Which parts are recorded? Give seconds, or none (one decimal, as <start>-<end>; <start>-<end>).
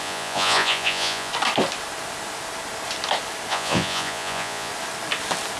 1.3-3.5; 4.7-5.6